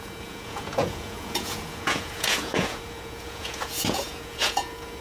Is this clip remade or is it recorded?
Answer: remade